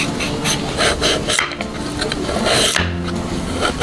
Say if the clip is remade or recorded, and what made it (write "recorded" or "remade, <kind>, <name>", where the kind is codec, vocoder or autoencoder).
recorded